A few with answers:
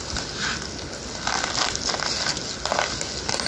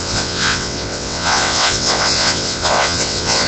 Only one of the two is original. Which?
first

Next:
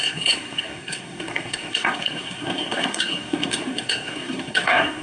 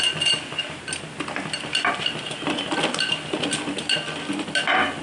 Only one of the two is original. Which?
second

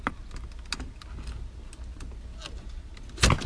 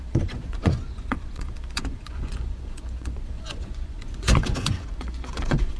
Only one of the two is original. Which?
first